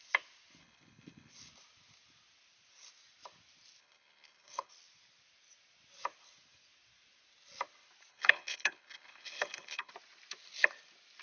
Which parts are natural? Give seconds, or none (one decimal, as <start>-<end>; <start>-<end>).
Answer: 0.0-0.6; 1.3-3.8; 4.7-8.1; 9.9-11.2